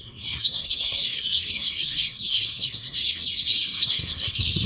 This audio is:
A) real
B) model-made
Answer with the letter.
B